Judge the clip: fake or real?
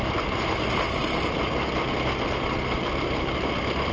real